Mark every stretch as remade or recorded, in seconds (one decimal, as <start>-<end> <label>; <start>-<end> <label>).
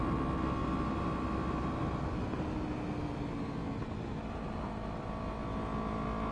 0.0-6.3 recorded